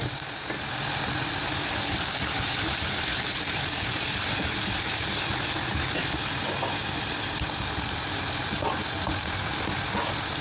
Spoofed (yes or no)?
no